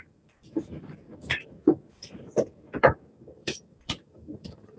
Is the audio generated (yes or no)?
yes